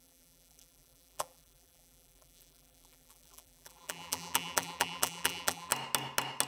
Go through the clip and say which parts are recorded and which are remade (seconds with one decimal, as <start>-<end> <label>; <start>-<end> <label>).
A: 0.0-5.7 remade; 5.7-6.5 recorded